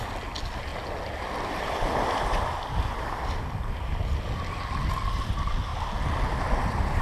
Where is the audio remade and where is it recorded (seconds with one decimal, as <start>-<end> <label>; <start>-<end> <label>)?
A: 0.0-7.0 recorded